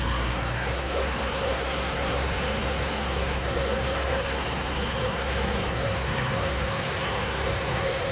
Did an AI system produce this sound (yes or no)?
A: yes